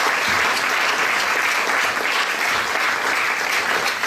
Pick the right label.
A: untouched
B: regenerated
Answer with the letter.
A